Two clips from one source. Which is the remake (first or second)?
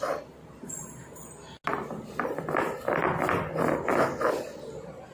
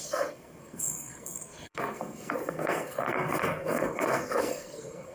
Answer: second